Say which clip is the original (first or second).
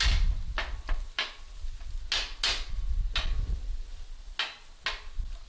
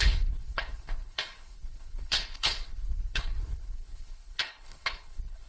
first